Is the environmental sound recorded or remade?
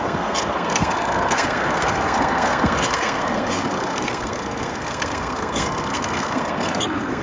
remade